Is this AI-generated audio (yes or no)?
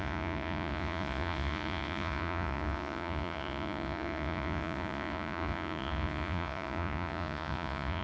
yes